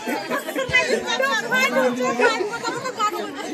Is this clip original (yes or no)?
yes